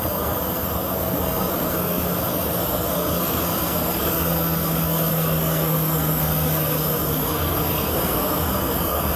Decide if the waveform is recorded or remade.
remade